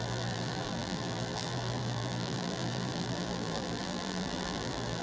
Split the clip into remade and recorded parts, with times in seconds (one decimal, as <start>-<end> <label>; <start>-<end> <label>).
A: 0.0-5.0 remade